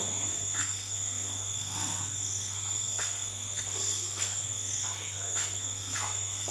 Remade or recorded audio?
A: remade